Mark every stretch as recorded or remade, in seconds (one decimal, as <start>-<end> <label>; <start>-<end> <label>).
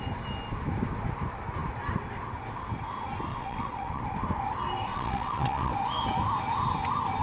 0.0-3.3 recorded; 3.3-4.0 remade; 4.0-4.9 recorded; 4.9-5.7 remade; 5.7-7.2 recorded